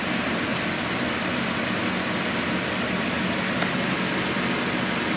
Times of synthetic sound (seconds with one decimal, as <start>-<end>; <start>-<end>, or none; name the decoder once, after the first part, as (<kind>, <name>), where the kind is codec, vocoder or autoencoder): none